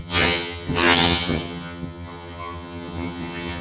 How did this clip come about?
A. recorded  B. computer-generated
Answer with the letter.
B